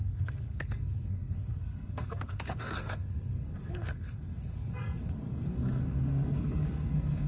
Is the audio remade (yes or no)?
yes